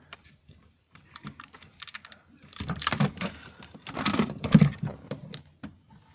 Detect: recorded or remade remade